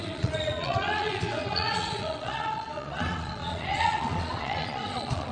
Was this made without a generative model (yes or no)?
no